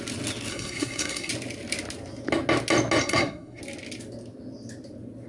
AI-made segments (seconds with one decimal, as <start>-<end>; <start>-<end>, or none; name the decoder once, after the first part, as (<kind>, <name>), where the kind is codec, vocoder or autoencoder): 0.5-1.3 (codec, SNAC); 3.0-3.6